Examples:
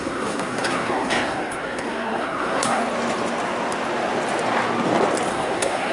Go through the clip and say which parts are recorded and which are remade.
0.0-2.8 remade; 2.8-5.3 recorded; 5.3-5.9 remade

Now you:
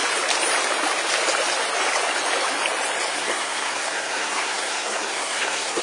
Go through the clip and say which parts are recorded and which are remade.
0.0-3.1 recorded; 3.1-5.8 remade